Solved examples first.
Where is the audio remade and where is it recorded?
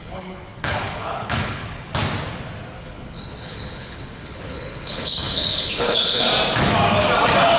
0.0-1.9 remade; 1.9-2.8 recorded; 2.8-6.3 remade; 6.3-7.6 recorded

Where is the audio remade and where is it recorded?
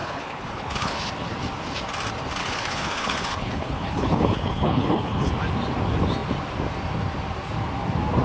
0.0-1.1 remade; 1.1-2.4 recorded; 2.4-5.3 remade; 5.3-8.2 recorded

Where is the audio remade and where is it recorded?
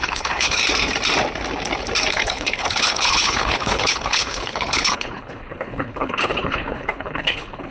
0.0-0.6 remade; 0.6-2.1 recorded; 2.1-7.7 remade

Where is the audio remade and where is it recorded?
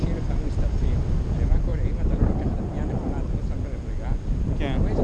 0.0-5.0 recorded